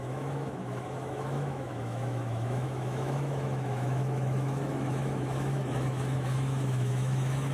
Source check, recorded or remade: remade